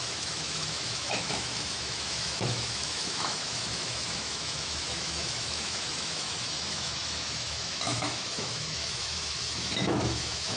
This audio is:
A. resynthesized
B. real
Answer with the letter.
A